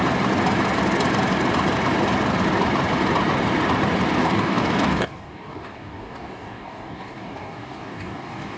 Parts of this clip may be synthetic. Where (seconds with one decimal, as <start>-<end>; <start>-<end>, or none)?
4.2-8.6